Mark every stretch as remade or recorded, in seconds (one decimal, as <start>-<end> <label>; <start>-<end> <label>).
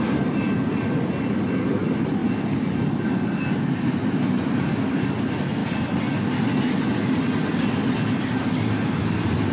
0.0-9.5 recorded